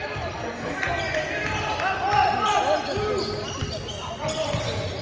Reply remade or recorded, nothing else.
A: recorded